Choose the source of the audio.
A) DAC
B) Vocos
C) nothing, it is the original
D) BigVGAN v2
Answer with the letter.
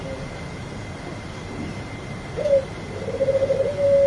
C